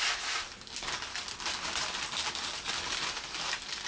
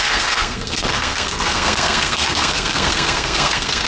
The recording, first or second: first